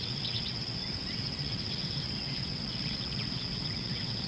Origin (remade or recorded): remade